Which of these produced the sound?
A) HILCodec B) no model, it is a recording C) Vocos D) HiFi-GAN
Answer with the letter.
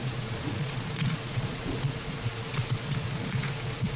C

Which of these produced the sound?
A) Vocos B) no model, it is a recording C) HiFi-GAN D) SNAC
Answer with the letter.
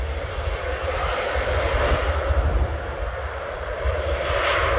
B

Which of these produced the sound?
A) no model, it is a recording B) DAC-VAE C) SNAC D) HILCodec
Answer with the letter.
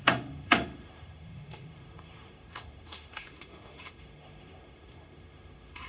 B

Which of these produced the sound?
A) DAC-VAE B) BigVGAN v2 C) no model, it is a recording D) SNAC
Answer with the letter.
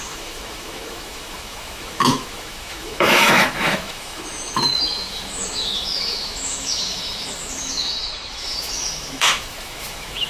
A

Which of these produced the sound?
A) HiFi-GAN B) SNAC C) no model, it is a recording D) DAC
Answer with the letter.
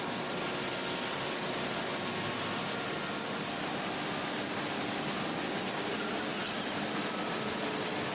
C